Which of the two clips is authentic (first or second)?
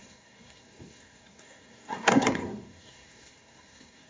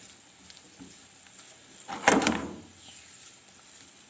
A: second